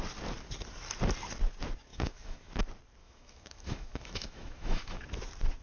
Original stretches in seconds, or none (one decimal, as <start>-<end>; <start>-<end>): 0.0-1.9; 2.5-3.0; 5.0-5.6